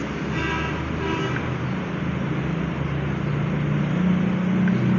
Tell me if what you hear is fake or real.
real